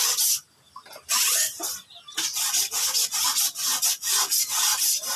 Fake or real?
real